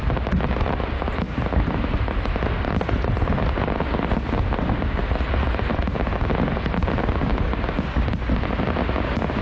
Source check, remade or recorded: recorded